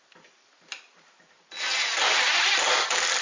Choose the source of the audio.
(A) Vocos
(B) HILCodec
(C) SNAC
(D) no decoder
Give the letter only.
D